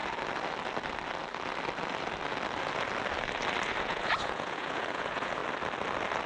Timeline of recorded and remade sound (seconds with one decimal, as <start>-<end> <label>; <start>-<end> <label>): 0.0-3.8 recorded; 3.8-5.4 remade; 5.4-6.3 recorded